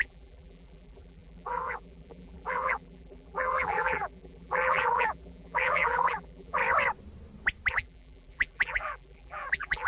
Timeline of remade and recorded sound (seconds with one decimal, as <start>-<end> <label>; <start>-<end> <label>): 0.0-6.6 remade; 6.6-7.7 recorded; 7.7-9.9 remade